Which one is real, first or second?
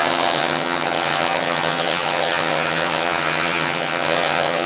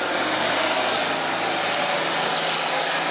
second